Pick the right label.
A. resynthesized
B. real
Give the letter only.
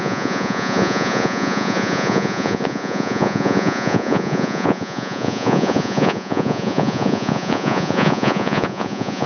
A